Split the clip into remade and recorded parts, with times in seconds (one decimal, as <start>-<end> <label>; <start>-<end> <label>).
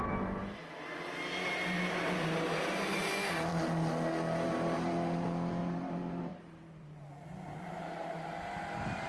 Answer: 0.0-3.5 remade; 3.5-4.5 recorded; 4.5-9.1 remade